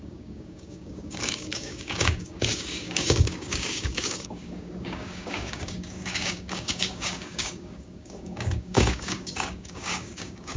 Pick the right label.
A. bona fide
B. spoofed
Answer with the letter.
B